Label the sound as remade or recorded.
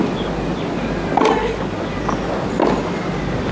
recorded